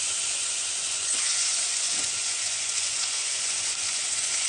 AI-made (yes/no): yes